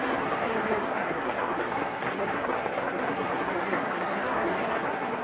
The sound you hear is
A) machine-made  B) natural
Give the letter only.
A